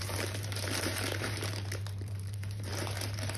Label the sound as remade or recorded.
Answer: remade